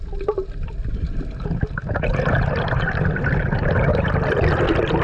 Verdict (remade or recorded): remade